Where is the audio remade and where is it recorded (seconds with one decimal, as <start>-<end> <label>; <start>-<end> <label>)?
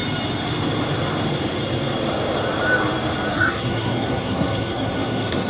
0.0-3.3 recorded; 3.3-5.5 remade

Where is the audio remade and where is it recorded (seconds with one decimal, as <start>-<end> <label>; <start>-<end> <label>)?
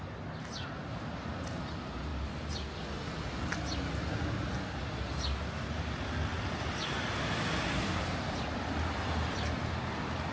0.0-2.1 recorded; 2.1-2.7 remade; 2.7-6.3 recorded; 6.3-9.8 remade; 9.8-10.3 recorded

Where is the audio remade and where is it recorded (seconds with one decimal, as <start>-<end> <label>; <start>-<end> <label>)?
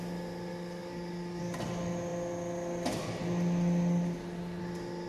0.0-0.5 recorded; 0.5-1.4 remade; 1.4-5.1 recorded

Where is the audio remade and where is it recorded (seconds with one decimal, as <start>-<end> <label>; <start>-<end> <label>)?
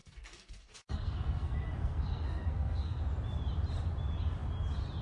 0.0-3.0 remade; 3.0-5.0 recorded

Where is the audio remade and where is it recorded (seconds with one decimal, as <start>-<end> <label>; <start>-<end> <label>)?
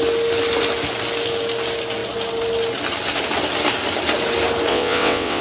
0.0-4.7 recorded; 4.7-5.4 remade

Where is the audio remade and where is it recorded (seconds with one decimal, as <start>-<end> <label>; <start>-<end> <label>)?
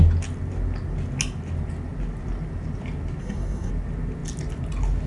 0.0-3.2 recorded; 3.2-3.7 remade; 3.7-5.1 recorded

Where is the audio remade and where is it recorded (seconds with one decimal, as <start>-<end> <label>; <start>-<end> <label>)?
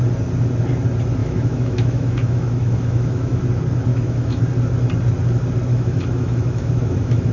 0.0-1.2 recorded; 1.2-3.4 remade; 3.4-3.9 recorded; 3.9-4.4 remade; 4.4-5.7 recorded; 5.7-7.3 remade